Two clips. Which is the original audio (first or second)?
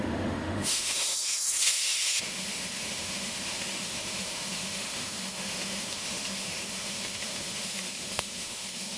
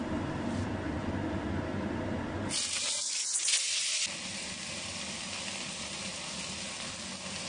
second